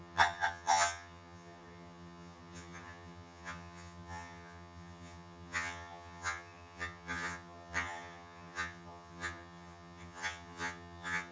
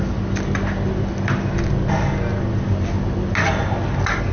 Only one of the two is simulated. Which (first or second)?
first